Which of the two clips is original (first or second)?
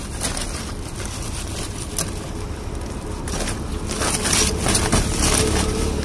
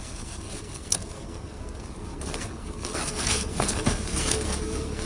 first